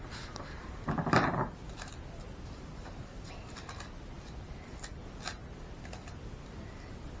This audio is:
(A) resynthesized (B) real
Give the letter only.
B